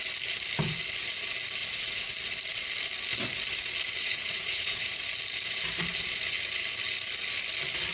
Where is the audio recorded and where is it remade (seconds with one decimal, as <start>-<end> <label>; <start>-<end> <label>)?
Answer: 0.0-1.6 recorded; 1.6-2.1 remade; 2.1-4.0 recorded; 4.0-5.0 remade; 5.0-7.9 recorded